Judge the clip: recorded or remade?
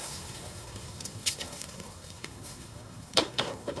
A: remade